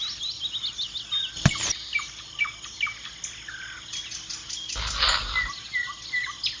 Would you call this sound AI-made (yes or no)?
no